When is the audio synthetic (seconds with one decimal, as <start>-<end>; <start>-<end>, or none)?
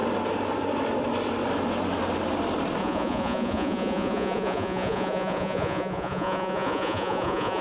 2.8-7.6